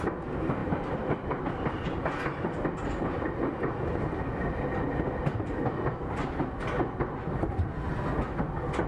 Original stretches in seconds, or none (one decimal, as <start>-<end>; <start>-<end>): 0.0-0.6; 1.4-8.9